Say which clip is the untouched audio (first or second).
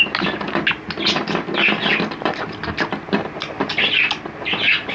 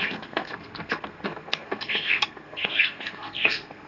first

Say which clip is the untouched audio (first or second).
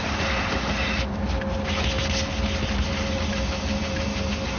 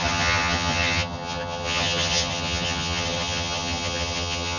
first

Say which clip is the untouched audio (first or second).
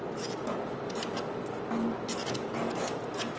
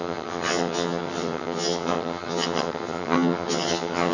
first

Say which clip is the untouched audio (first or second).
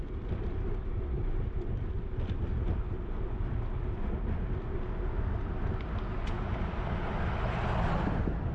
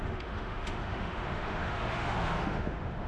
first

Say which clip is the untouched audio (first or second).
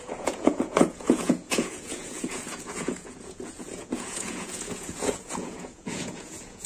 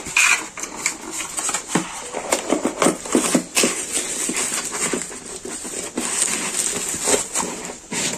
second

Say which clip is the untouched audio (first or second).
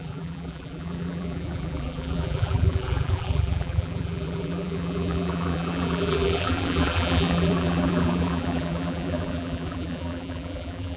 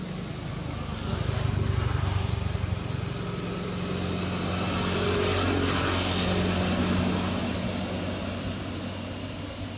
second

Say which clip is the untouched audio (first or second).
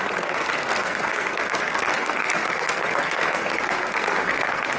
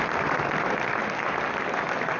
second